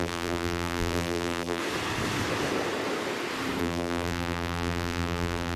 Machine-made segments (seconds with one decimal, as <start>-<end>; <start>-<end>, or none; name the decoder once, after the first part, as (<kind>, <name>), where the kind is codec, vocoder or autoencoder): 0.0-1.6 (vocoder, BigVGAN v2); 3.6-5.6